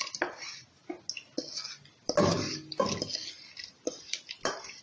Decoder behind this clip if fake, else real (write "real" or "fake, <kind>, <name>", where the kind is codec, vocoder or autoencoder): real